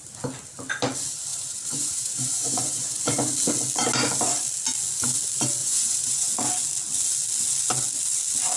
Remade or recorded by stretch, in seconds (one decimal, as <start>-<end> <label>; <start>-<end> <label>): 0.0-1.3 recorded; 1.3-3.3 remade; 3.3-5.6 recorded; 5.6-6.3 remade; 6.3-8.6 recorded